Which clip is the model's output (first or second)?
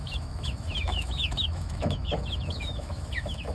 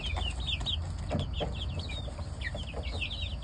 first